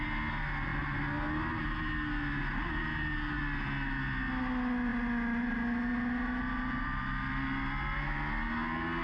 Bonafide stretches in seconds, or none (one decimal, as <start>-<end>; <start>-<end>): 0.0-9.0